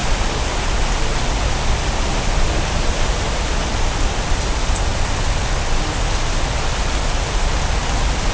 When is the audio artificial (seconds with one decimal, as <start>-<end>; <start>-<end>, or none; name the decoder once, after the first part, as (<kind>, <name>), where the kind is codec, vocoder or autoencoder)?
none